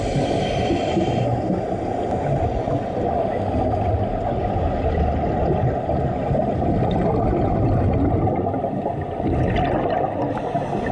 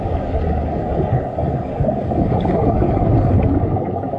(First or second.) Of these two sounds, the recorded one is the first